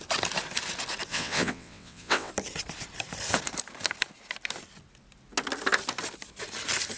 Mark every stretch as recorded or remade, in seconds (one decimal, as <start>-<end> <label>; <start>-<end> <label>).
0.0-1.1 recorded; 1.1-2.3 remade; 2.3-7.0 recorded